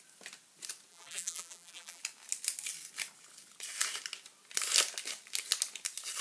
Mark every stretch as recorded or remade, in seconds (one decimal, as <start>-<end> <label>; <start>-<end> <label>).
0.0-0.9 recorded; 0.9-2.0 remade; 2.0-6.2 recorded